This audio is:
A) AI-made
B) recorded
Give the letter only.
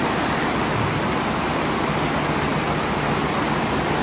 B